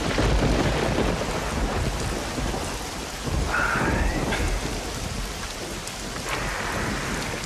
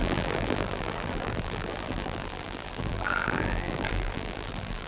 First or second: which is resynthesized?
second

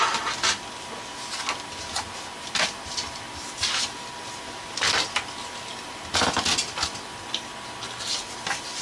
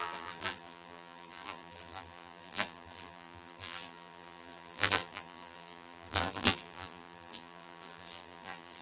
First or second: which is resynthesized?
second